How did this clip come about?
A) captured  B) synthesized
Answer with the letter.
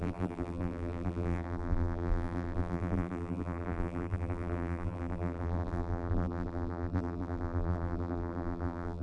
B